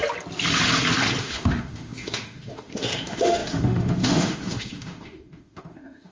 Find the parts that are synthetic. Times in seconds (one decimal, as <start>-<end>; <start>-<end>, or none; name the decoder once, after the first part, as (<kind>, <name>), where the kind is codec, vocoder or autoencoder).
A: 1.2-6.1 (autoencoder, DAC-VAE)